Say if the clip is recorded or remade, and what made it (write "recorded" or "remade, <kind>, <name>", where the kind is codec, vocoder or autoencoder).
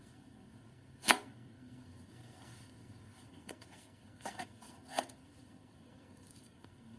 remade, codec, SNAC